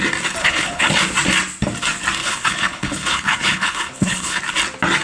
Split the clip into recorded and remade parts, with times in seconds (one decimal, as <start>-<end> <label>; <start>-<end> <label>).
0.0-0.4 recorded; 0.4-0.9 remade; 0.9-2.2 recorded; 2.2-4.4 remade; 4.4-5.0 recorded